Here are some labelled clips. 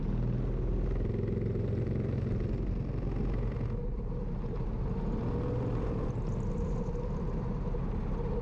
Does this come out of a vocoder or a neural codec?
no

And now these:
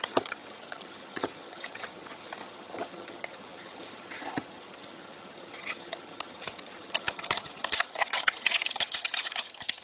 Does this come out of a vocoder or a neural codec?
yes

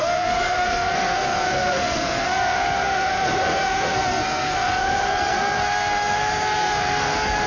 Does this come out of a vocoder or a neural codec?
yes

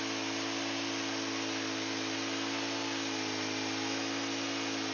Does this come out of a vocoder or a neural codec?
no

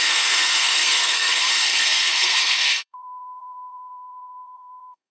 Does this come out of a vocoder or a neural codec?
yes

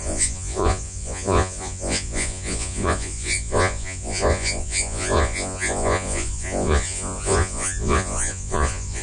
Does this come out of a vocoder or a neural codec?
yes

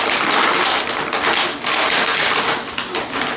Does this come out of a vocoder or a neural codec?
no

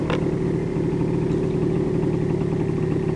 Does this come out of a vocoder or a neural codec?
no